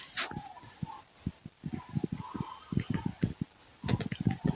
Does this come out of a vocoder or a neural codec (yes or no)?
no